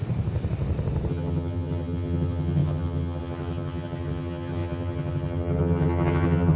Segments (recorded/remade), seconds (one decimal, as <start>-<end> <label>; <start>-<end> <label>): 0.0-1.1 recorded; 1.1-6.6 remade